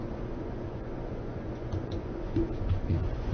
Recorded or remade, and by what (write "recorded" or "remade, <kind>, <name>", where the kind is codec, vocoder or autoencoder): remade, vocoder, Vocos